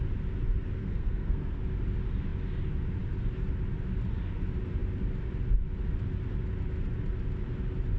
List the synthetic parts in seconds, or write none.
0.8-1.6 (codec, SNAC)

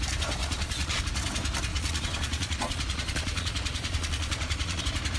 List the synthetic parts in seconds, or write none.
0.4-1.0 (vocoder, Vocos); 1.7-4.8

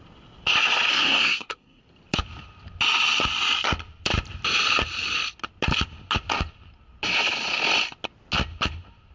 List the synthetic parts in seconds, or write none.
0.9-1.8 (codec, SNAC)

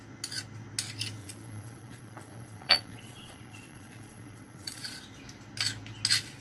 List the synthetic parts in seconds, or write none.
1.2-5.0 (vocoder, Vocos)